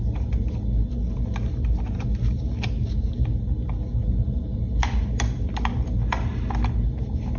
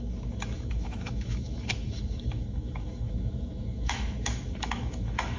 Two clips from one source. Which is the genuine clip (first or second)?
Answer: first